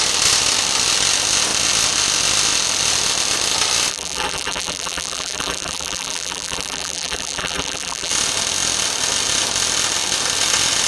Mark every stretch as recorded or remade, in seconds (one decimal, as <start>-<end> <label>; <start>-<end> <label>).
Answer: 0.0-3.9 recorded; 3.9-8.1 remade; 8.1-10.9 recorded